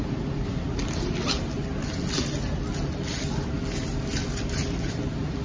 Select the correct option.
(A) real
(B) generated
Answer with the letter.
A